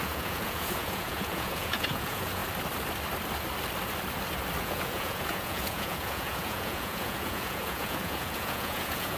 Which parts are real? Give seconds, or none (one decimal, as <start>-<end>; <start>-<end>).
2.4-4.6